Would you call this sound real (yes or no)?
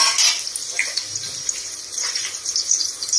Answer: yes